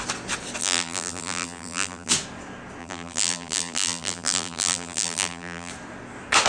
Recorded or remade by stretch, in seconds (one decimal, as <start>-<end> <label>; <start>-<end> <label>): 0.0-0.6 recorded; 0.6-2.1 remade; 2.1-2.8 recorded; 2.8-5.7 remade; 5.7-6.5 recorded